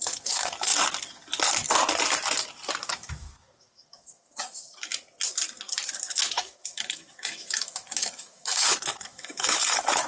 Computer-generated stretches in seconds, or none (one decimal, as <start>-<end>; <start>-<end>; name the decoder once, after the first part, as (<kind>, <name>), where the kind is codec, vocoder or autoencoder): 0.0-0.7 (autoencoder, DAC-VAE); 2.9-4.9; 6.1-10.1